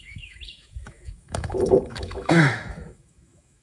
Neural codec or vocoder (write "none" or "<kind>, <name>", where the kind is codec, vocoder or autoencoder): autoencoder, DAC-VAE